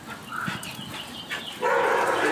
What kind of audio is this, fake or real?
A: real